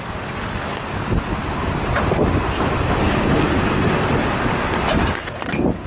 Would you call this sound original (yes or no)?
yes